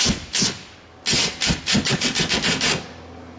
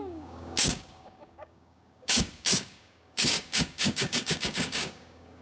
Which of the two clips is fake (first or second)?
second